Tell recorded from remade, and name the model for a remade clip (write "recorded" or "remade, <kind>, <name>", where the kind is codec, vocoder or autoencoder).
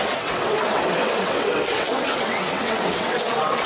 remade, vocoder, WaveNeXt